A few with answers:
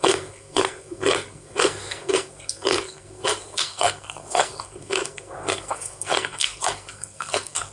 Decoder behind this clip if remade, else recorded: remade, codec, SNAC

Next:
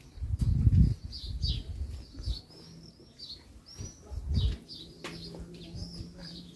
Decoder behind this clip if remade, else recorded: recorded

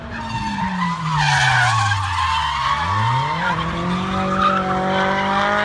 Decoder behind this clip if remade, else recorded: recorded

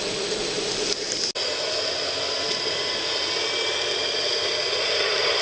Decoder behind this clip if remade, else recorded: recorded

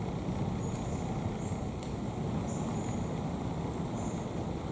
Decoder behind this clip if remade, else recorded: recorded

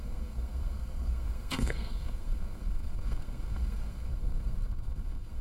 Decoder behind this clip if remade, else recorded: remade, codec, SNAC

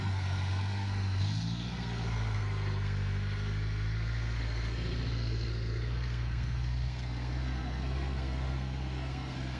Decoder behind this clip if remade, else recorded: remade, codec, SNAC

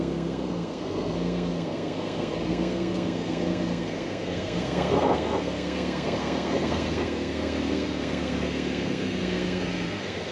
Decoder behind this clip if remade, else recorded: remade, codec, SNAC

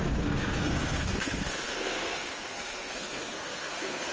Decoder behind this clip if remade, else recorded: remade, codec, SNAC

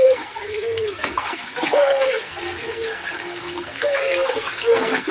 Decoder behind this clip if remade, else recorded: remade, codec, SNAC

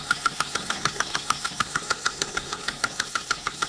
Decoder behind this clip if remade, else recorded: remade, codec, SNAC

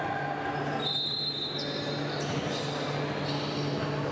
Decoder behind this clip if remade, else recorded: recorded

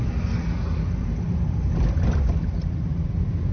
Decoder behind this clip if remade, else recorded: recorded